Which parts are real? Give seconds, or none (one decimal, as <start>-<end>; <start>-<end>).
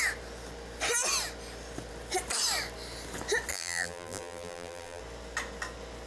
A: 0.0-3.5; 5.0-6.1